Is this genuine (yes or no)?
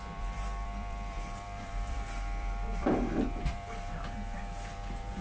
no